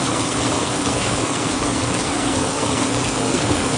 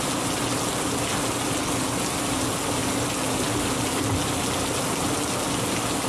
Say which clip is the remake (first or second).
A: first